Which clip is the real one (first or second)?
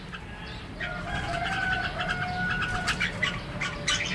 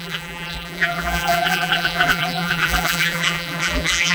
first